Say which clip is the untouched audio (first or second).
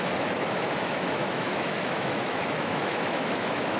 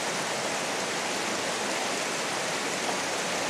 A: second